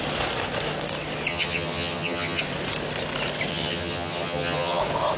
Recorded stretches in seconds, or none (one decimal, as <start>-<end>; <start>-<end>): 0.0-1.3; 2.4-3.5; 4.8-5.2